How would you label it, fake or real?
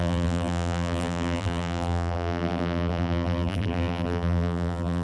fake